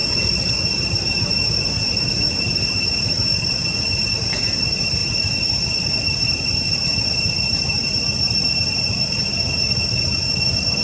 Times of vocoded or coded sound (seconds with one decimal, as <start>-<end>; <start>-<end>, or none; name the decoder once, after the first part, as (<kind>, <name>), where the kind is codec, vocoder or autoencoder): 0.5-10.8 (vocoder, BigVGAN v2)